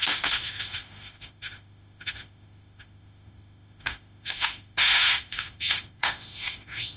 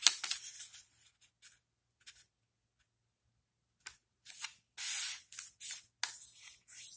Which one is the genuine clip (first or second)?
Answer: second